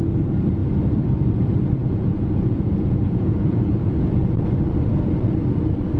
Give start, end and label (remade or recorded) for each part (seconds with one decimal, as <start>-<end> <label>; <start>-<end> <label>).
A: 0.0-1.8 recorded; 1.8-4.5 remade; 4.5-6.0 recorded